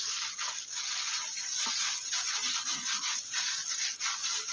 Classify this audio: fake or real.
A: real